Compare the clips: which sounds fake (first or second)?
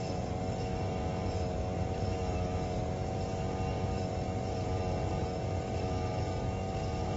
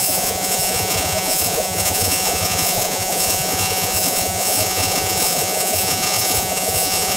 second